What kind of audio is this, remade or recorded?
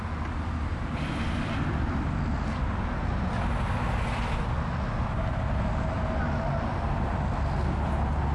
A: recorded